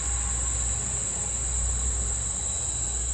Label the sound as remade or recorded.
recorded